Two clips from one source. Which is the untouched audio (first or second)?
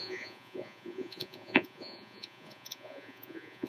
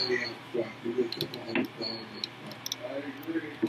second